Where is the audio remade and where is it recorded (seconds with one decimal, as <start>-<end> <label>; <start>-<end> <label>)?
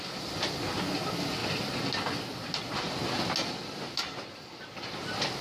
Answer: 0.0-5.4 recorded